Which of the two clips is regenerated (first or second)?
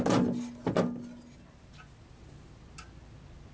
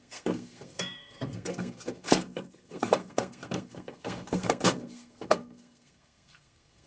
second